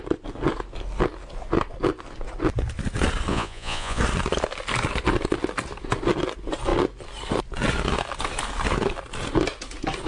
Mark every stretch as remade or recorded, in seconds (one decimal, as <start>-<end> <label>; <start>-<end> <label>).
0.0-3.3 recorded; 3.3-4.0 remade; 4.0-10.1 recorded